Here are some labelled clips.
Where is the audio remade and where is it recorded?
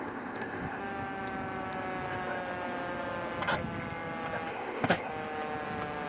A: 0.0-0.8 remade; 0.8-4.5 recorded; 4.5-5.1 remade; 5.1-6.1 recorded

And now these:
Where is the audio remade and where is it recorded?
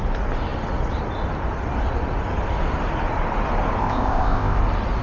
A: 0.0-3.8 recorded; 3.8-4.6 remade; 4.6-5.0 recorded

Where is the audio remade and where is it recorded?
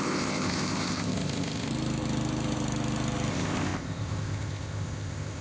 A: 0.0-1.7 remade; 1.7-3.3 recorded; 3.3-5.4 remade